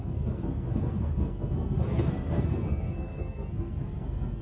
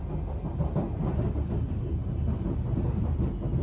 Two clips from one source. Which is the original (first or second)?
second